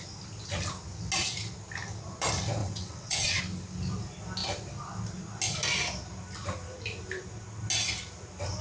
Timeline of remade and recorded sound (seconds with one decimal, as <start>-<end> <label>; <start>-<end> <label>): 0.0-2.6 recorded; 2.6-3.4 remade; 3.4-8.6 recorded